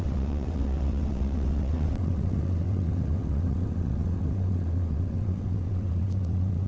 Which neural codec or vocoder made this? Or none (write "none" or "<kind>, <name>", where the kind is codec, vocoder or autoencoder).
vocoder, WaveNeXt